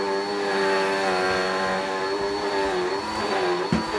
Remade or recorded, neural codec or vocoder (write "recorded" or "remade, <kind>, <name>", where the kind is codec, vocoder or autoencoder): recorded